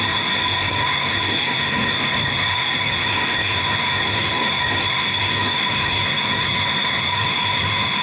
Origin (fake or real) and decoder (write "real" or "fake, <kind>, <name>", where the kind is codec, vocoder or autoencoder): fake, codec, SNAC